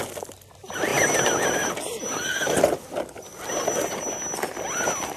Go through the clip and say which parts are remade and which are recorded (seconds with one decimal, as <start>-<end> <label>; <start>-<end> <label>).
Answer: 0.0-5.2 recorded